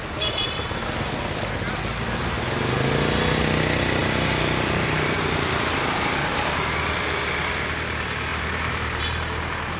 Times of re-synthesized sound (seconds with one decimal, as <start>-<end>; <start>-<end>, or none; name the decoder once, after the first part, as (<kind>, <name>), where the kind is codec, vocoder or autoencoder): 4.0-6.7 (vocoder, BigVGAN v2); 8.3-9.0